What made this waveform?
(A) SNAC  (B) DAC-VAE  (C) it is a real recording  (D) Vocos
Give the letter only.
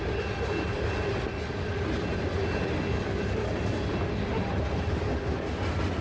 C